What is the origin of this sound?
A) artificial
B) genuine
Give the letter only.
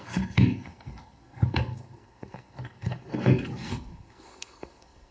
A